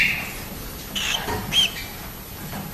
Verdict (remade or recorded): recorded